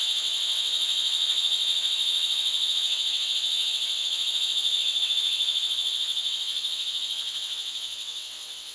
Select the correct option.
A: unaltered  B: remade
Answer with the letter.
B